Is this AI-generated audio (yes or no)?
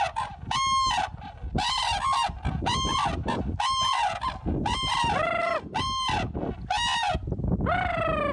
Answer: no